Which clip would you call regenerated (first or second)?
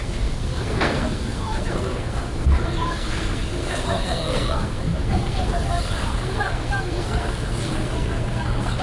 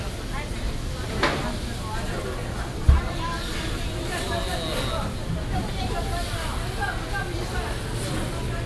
first